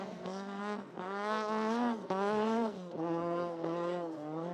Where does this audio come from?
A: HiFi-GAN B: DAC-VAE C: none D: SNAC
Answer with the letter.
D